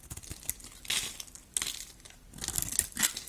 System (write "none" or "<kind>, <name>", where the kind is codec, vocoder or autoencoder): none